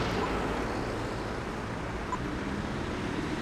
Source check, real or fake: real